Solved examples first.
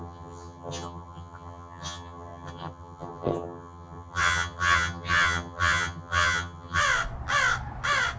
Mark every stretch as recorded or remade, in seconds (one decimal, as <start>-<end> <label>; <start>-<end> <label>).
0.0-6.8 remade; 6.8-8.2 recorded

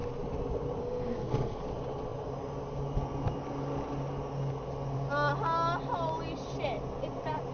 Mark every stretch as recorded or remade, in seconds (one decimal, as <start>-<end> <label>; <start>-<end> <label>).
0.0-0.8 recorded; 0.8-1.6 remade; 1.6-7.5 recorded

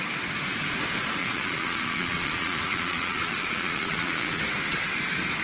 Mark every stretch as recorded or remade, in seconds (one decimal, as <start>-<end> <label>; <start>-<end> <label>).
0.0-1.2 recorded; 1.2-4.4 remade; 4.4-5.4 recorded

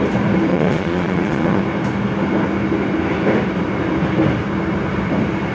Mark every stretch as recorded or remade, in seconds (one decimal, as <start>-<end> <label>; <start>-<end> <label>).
0.0-0.5 recorded; 0.5-1.6 remade; 1.6-5.5 recorded